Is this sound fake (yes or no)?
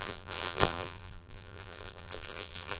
yes